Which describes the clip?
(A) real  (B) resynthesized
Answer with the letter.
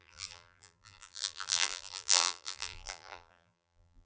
B